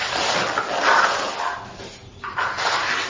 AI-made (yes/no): no